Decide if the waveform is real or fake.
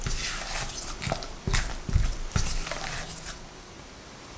real